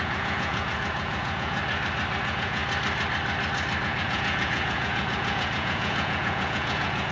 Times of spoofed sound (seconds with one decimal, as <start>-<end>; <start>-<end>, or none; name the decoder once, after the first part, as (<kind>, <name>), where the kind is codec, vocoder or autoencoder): 0.0-1.6 (vocoder, Vocos); 2.2-2.6; 3.8-7.1